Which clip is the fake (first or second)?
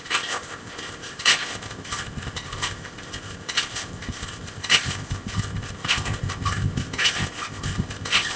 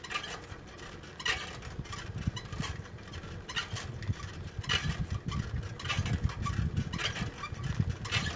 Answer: first